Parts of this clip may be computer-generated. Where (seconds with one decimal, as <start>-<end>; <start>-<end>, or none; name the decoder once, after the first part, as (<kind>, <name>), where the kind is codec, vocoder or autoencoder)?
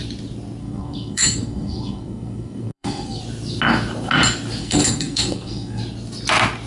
0.6-3.2 (codec, SNAC); 4.6-5.8